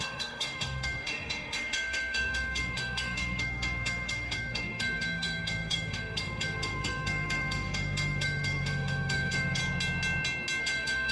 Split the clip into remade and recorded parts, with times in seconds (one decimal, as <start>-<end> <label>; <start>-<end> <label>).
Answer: 0.0-9.6 remade; 9.6-10.6 recorded; 10.6-11.1 remade

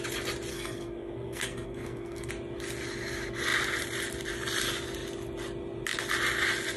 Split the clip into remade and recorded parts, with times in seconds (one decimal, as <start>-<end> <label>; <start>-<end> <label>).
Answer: 0.0-0.5 recorded; 0.5-2.3 remade; 2.3-6.8 recorded

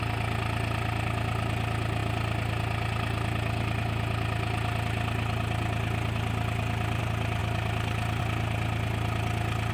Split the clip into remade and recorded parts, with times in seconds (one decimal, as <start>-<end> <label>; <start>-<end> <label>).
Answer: 0.0-9.7 recorded